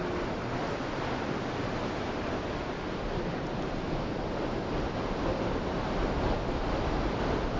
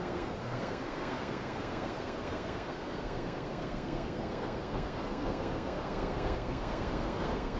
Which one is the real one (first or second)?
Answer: first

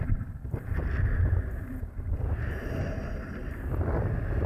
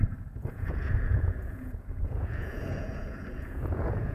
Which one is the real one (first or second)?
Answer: first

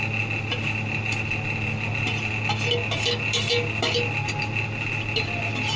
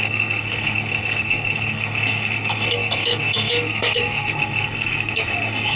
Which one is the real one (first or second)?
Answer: first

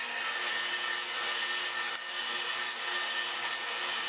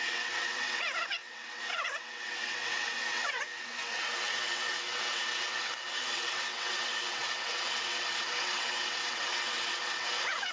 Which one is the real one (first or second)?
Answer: first